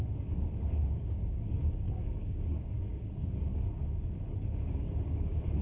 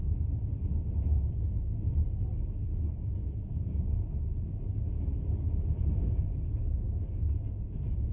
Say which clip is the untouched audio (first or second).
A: second